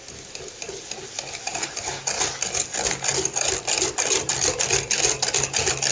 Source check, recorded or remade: recorded